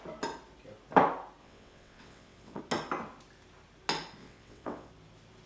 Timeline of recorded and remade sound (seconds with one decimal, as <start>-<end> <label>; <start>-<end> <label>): 0.0-1.4 recorded; 1.4-2.6 remade; 2.6-4.2 recorded; 4.2-4.9 remade; 4.9-5.5 recorded

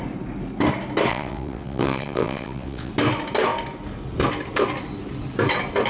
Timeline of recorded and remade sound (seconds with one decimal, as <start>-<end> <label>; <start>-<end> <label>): 0.0-1.1 recorded; 1.1-2.9 remade; 2.9-5.9 recorded

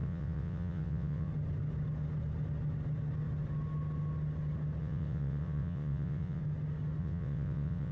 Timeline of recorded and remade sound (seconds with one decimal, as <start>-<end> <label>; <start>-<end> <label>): 0.0-1.3 remade; 1.3-4.8 recorded; 4.8-6.4 remade; 6.4-7.0 recorded; 7.0-7.9 remade

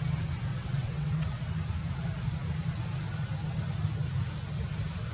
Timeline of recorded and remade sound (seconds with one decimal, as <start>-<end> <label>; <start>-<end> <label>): 0.0-0.5 recorded; 0.5-1.5 remade; 1.5-5.1 recorded

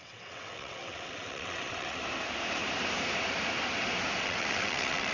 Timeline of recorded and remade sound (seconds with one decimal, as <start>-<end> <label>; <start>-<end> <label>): 0.0-2.0 remade; 2.0-4.2 recorded; 4.2-5.1 remade

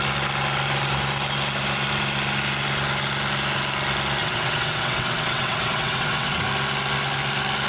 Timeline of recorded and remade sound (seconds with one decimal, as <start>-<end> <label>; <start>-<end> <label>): 0.0-4.2 recorded; 4.2-6.4 remade; 6.4-7.7 recorded